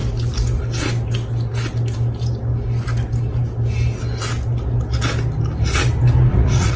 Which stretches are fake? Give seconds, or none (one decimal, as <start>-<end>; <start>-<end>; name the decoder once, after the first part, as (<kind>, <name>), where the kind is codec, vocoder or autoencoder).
6.3-6.8 (vocoder, Vocos)